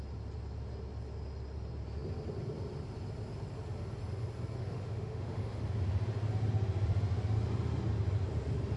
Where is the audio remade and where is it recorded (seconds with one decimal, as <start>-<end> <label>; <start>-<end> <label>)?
0.0-4.6 recorded; 4.6-5.6 remade; 5.6-8.8 recorded

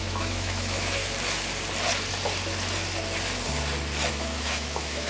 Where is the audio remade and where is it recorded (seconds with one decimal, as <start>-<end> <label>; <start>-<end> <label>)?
0.0-1.0 remade; 1.0-4.1 recorded; 4.1-5.1 remade

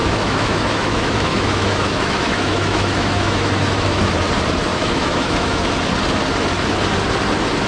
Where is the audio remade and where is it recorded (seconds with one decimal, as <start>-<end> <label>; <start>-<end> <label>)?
0.0-4.1 remade; 4.1-4.7 recorded; 4.7-5.7 remade; 5.7-7.7 recorded